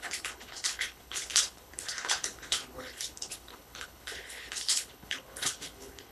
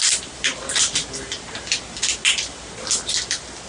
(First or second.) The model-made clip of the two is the first